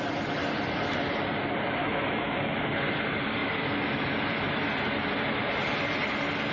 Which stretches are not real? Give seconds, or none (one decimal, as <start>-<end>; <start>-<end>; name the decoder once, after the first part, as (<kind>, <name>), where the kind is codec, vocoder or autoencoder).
1.8-2.6 (autoencoder, DAC-VAE)